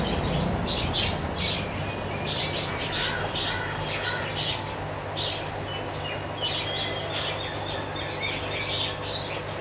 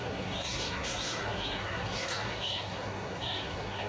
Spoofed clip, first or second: second